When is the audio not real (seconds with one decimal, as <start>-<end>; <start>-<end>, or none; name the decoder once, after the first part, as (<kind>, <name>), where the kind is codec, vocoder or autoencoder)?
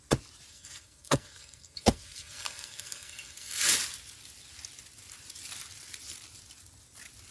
0.5-3.7 (codec, SNAC)